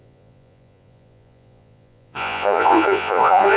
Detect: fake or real fake